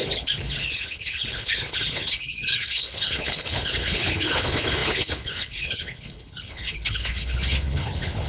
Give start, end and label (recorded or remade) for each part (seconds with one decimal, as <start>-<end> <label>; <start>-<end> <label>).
0.0-8.3 remade